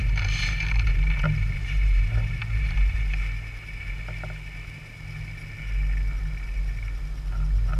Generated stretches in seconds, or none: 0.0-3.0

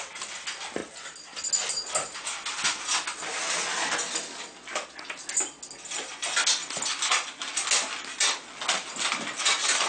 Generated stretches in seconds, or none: none